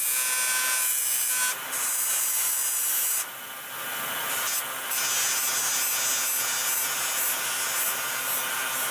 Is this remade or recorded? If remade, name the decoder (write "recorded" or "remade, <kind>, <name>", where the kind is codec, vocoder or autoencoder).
recorded